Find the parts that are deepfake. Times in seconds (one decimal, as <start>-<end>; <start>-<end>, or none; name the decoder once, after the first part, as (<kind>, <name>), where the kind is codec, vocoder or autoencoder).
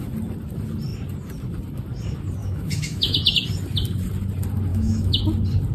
2.4-3.2 (autoencoder, DAC-VAE); 4.7-5.2